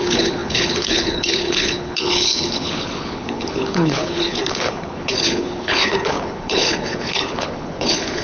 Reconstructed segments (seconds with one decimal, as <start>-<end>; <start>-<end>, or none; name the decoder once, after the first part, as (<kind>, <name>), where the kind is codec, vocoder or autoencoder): 0.0-8.2 (codec, HILCodec)